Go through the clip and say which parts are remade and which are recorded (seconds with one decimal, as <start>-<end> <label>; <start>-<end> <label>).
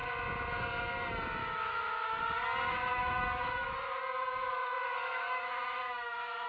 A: 0.0-1.4 recorded; 1.4-2.2 remade; 2.2-2.9 recorded; 2.9-4.0 remade; 4.0-4.6 recorded; 4.6-6.5 remade